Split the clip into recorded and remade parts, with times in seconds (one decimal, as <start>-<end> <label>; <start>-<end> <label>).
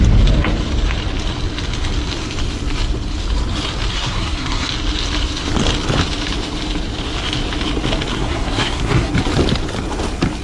0.0-3.9 recorded; 3.9-4.7 remade; 4.7-8.1 recorded; 8.1-9.1 remade; 9.1-10.4 recorded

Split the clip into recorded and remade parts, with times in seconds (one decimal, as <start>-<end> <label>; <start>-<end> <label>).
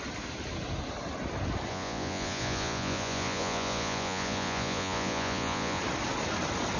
0.0-1.7 recorded; 1.7-5.8 remade; 5.8-6.8 recorded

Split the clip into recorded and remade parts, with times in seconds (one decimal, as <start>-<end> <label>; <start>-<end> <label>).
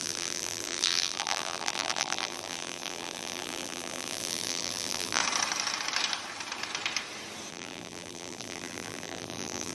0.0-5.2 remade; 5.2-7.5 recorded; 7.5-9.7 remade